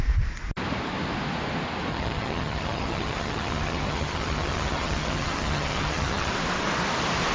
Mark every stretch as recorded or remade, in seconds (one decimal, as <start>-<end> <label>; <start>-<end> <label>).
0.0-1.9 recorded; 1.9-6.3 remade; 6.3-7.3 recorded